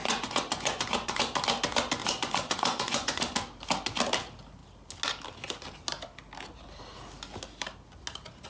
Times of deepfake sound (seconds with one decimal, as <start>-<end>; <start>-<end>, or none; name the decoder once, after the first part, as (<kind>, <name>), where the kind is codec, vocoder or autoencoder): 0.0-1.2 (vocoder, Vocos); 2.0-3.2